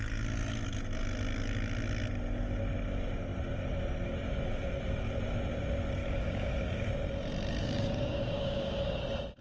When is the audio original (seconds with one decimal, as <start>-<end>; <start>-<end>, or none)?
0.0-6.0; 6.9-7.6; 9.0-9.4